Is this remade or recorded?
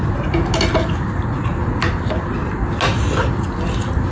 recorded